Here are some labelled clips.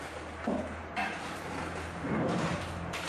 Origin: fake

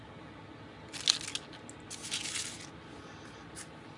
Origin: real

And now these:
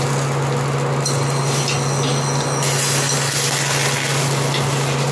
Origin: real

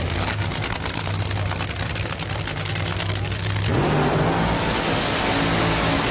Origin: real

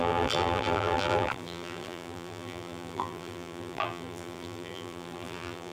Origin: fake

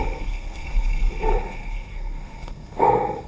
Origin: fake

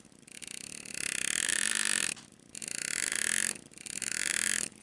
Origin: real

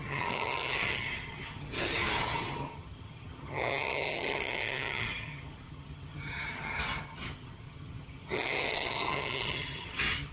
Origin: fake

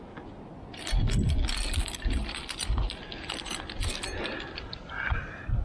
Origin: real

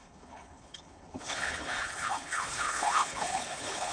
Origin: fake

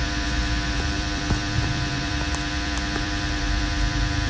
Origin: fake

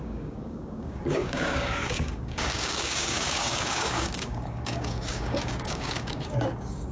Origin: fake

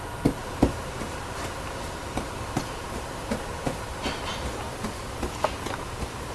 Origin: real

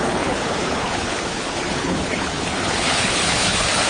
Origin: fake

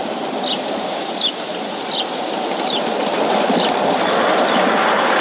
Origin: real